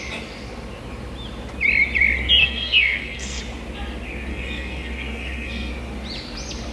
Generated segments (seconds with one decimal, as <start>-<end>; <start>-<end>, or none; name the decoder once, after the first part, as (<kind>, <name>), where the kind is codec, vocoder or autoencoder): 2.4-3.4 (codec, SNAC); 4.3-5.7